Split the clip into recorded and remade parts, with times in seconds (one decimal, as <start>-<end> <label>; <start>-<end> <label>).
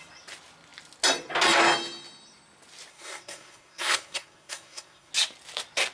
0.0-2.9 recorded; 2.9-5.1 remade; 5.1-5.9 recorded